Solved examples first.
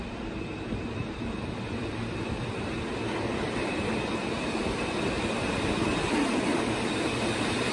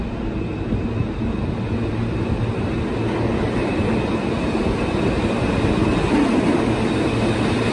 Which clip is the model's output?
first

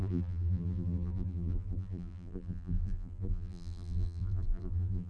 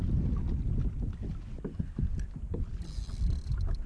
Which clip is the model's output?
first